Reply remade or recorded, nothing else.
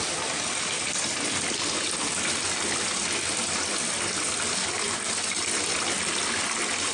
recorded